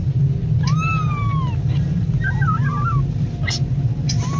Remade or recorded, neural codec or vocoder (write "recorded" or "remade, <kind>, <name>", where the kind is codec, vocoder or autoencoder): recorded